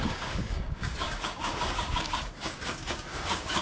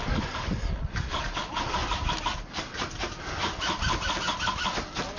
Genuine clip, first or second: second